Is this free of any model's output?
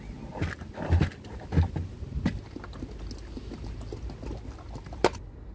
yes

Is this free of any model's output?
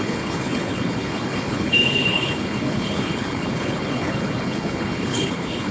no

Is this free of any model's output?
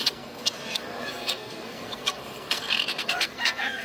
no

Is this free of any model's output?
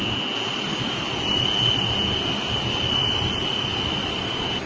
yes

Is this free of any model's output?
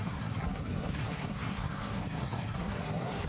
no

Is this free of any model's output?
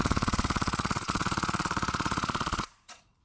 no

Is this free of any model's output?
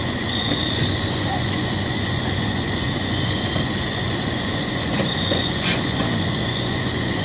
no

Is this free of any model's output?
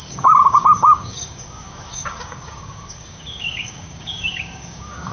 no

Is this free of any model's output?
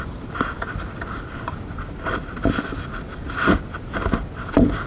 yes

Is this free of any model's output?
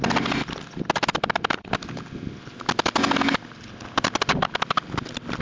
yes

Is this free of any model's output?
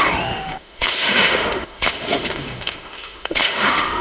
no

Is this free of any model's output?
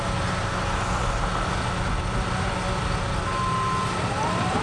yes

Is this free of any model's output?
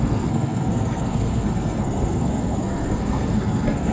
no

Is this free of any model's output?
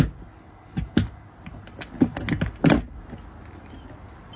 yes